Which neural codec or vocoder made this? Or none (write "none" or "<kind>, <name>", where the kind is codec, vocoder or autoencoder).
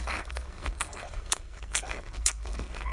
codec, SNAC